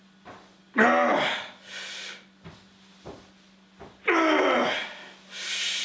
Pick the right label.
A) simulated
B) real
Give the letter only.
B